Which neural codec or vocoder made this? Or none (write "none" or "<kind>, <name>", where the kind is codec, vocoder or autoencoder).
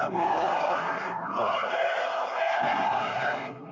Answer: codec, SNAC